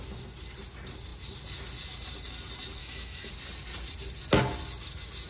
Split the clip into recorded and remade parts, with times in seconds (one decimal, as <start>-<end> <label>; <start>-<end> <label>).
0.0-2.8 recorded; 2.8-3.3 remade; 3.3-5.3 recorded

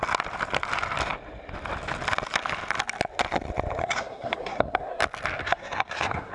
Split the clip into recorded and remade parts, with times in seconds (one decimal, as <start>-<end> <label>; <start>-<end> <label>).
0.0-3.8 recorded; 3.8-5.0 remade; 5.0-5.4 recorded; 5.4-6.3 remade

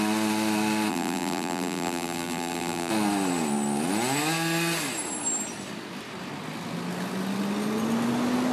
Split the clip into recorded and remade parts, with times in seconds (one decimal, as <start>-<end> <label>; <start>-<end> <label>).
0.0-0.9 recorded; 0.9-2.9 remade; 2.9-8.5 recorded